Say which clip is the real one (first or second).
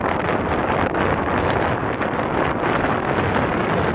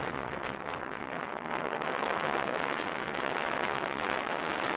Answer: first